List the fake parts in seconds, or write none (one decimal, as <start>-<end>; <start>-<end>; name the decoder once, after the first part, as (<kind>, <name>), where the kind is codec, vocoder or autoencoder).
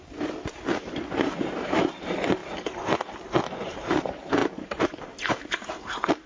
0.0-2.4 (vocoder, BigVGAN v2); 3.7-6.3